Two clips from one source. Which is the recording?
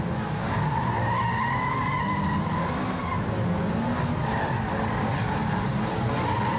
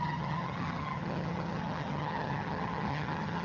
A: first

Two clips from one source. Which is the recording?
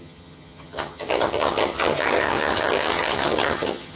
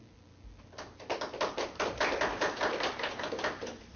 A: second